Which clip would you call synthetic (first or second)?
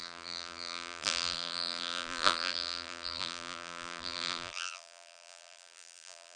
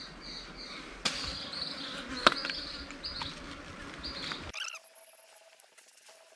first